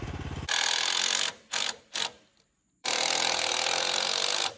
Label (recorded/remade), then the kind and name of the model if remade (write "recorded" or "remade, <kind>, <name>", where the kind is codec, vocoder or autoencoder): remade, vocoder, BigVGAN v2